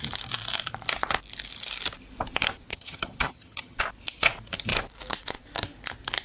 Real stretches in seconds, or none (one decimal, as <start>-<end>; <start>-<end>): 0.0-2.7; 3.8-6.2